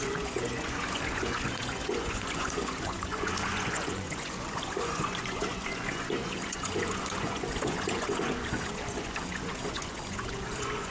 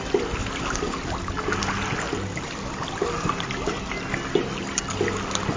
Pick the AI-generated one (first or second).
first